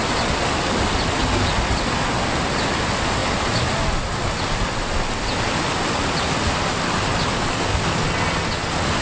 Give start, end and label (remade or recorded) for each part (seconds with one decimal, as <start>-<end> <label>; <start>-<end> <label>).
0.0-9.0 recorded